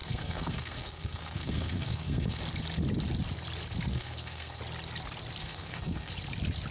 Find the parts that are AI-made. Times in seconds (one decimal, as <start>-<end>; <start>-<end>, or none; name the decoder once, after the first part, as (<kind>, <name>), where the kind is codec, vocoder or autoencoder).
0.0-2.4 (codec, SNAC); 3.9-4.6; 5.4-6.1